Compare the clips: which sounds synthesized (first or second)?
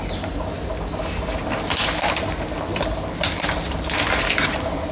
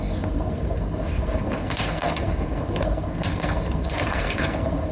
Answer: second